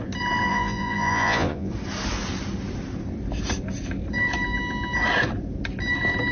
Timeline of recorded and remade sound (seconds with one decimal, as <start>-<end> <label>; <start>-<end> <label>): 0.0-0.5 recorded; 0.5-1.7 remade; 1.7-6.3 recorded